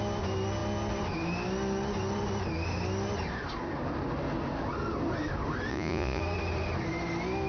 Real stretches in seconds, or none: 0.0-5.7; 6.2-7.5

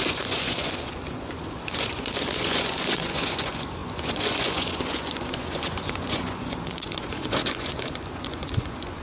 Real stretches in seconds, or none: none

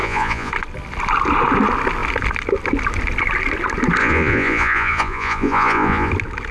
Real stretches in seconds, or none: 0.5-4.0; 6.1-6.5